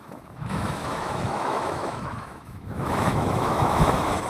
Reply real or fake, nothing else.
fake